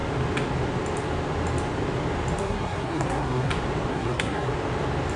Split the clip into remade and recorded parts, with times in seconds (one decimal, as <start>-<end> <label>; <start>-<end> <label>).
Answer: 0.0-2.4 recorded; 2.4-3.5 remade; 3.5-3.9 recorded; 3.9-4.5 remade; 4.5-5.2 recorded